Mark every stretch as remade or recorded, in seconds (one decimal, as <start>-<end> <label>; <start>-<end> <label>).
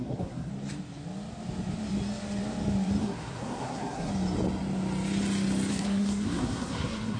0.0-0.5 remade; 0.5-3.0 recorded; 3.0-4.1 remade; 4.1-5.7 recorded; 5.7-7.2 remade